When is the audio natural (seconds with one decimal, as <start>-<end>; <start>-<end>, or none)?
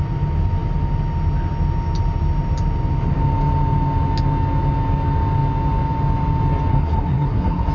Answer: 0.0-6.7